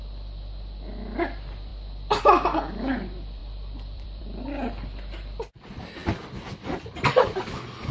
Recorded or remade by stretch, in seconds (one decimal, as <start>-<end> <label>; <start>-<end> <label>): 0.0-3.4 recorded; 3.4-4.2 remade; 4.2-6.0 recorded; 6.0-7.5 remade; 7.5-7.9 recorded